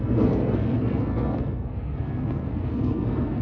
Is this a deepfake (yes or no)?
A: yes